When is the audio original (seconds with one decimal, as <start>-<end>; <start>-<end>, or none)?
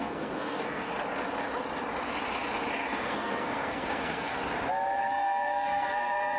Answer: 0.9-2.8; 4.4-5.0